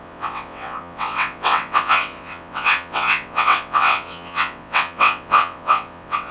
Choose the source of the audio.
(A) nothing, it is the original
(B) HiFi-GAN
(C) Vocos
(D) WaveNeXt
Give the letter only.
D